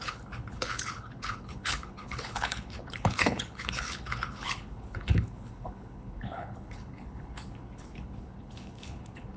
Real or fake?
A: fake